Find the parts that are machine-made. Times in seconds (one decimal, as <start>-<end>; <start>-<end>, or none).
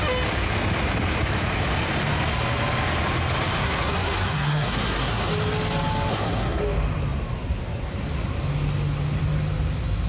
3.6-5.3; 6.1-6.6